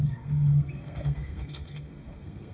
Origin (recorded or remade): remade